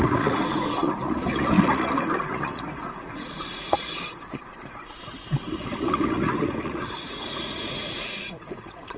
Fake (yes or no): yes